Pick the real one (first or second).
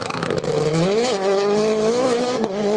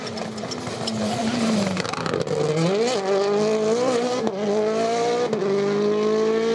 second